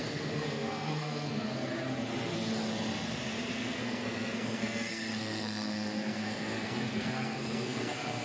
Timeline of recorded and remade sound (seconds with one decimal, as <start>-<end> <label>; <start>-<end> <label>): 0.0-1.7 remade; 1.7-3.5 recorded; 3.5-8.2 remade